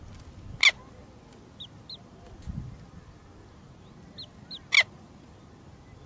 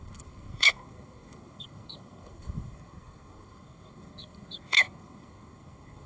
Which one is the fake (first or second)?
second